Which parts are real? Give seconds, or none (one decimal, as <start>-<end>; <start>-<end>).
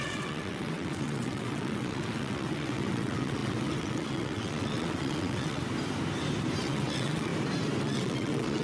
5.6-6.6; 7.3-7.8